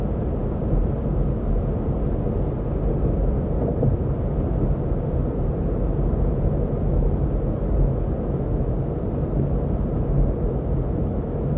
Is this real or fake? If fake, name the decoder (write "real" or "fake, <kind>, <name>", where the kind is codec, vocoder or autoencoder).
real